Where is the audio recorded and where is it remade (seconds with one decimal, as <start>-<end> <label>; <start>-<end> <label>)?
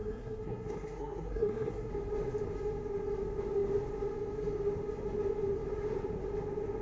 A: 0.0-1.9 remade; 1.9-6.8 recorded